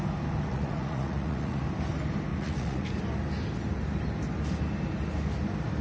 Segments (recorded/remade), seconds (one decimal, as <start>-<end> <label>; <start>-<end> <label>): 0.0-0.5 recorded; 0.5-1.6 remade; 1.6-2.3 recorded; 2.3-2.9 remade; 2.9-5.8 recorded